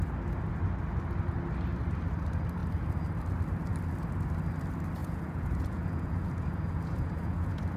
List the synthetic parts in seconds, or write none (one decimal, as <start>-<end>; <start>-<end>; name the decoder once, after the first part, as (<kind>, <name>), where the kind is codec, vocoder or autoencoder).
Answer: 5.0-7.8 (vocoder, Vocos)